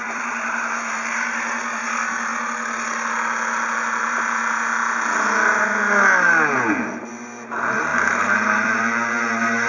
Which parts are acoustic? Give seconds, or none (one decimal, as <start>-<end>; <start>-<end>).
2.3-4.0; 4.4-7.1